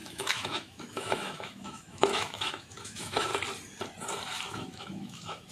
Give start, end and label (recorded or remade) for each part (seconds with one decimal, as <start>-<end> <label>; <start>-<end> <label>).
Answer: 0.0-3.3 remade; 3.3-4.5 recorded; 4.5-5.5 remade